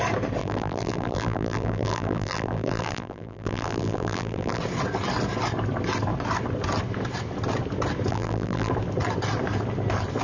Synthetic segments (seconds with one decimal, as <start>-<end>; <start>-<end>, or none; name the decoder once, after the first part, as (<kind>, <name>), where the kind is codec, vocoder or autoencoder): 0.4-4.6 (vocoder, BigVGAN v2); 8.1-8.7